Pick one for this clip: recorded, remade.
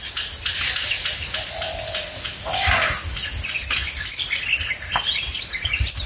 recorded